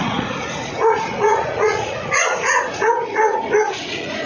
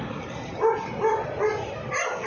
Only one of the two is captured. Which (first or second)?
second